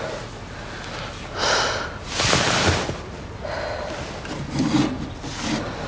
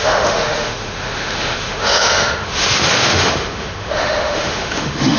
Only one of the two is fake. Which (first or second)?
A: second